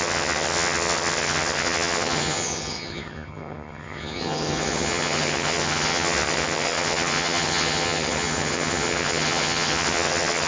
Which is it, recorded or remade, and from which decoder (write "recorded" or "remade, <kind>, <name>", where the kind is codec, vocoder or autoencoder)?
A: remade, vocoder, HiFi-GAN